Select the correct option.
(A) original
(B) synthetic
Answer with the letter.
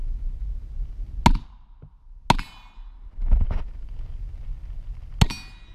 A